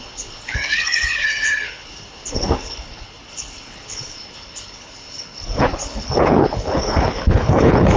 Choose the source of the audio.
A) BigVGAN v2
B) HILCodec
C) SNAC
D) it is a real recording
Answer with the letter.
B